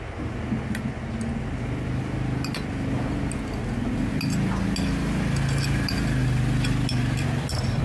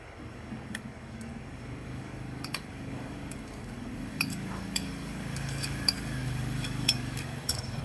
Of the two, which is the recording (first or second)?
first